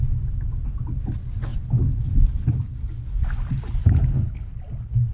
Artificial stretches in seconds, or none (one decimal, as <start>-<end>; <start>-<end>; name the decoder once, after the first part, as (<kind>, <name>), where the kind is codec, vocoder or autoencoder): 3.8-4.5 (codec, HILCodec)